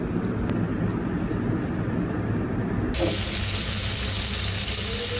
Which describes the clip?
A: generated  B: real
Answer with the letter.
B